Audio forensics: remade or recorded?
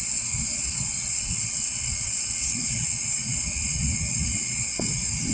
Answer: remade